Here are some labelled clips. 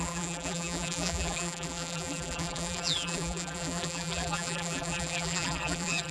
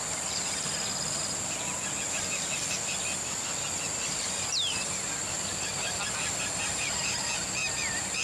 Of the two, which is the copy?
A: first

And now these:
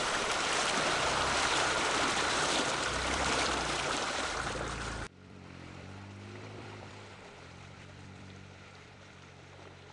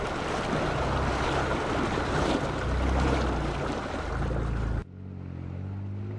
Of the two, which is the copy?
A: first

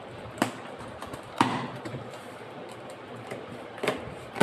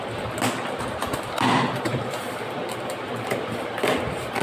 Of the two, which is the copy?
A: first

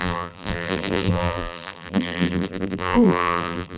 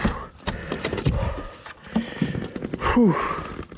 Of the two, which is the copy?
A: first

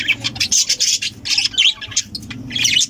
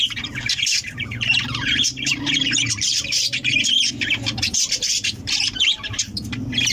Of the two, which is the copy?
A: second